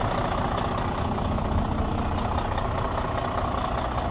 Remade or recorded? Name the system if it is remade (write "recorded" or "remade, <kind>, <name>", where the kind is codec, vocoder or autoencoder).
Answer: recorded